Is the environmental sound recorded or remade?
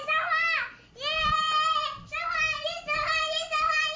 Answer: recorded